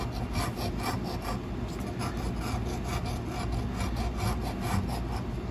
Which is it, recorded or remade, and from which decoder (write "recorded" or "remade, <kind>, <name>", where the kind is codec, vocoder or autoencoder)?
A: recorded